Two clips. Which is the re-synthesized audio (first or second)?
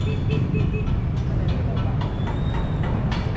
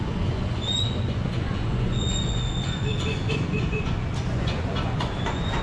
second